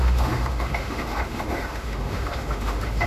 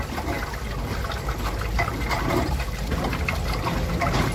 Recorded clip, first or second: second